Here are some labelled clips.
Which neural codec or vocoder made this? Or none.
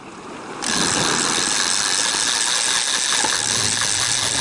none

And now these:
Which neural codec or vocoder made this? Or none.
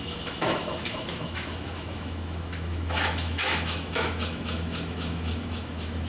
autoencoder, DAC-VAE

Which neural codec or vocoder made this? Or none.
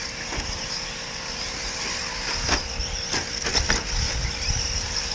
none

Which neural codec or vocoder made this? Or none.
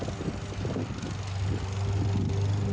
none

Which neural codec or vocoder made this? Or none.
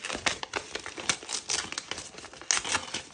none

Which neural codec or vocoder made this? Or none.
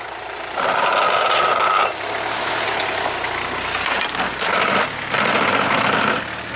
none